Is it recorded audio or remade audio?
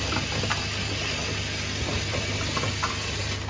recorded